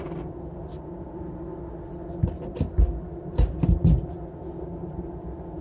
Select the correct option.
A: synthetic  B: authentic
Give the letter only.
B